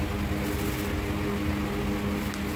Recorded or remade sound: recorded